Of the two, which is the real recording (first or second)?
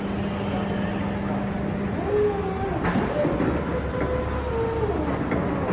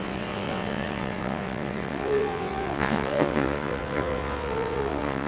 first